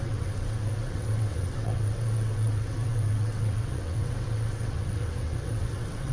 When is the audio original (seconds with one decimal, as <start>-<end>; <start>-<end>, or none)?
none